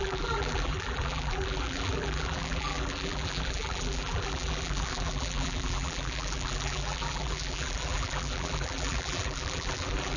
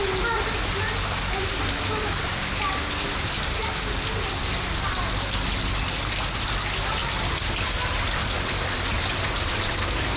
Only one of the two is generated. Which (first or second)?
first